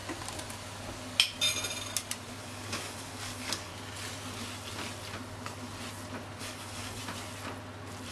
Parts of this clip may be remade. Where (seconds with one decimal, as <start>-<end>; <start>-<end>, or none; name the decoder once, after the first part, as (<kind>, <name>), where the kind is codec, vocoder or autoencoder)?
2.4-3.7 (codec, DAC); 6.4-7.0